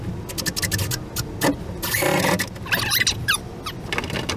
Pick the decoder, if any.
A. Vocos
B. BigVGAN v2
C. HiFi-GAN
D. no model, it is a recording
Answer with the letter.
D